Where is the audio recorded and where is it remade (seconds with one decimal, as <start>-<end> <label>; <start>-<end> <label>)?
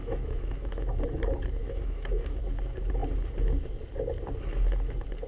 0.0-1.0 remade; 1.0-1.6 recorded; 1.6-2.4 remade; 2.4-5.3 recorded